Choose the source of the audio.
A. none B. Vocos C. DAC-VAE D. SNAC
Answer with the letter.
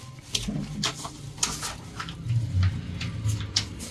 A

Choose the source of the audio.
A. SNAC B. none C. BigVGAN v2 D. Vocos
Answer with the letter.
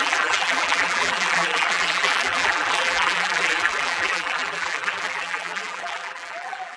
C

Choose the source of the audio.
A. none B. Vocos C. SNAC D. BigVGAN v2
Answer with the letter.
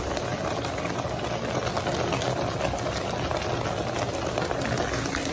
A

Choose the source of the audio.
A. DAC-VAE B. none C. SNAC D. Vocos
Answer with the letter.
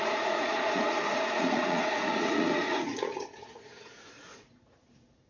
D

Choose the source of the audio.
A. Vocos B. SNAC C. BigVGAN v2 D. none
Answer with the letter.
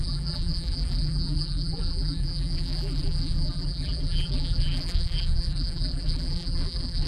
C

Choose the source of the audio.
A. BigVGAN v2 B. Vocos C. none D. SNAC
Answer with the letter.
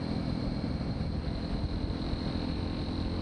C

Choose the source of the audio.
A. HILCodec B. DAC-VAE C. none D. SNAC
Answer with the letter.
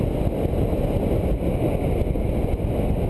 C